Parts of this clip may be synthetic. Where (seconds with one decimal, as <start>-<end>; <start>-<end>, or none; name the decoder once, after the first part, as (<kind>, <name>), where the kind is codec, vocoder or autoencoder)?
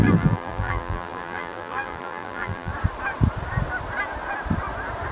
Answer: 0.0-2.7 (vocoder, BigVGAN v2)